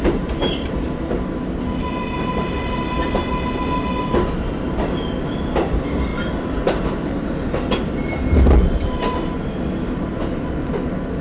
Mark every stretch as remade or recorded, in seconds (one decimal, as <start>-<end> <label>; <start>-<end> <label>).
0.0-11.2 recorded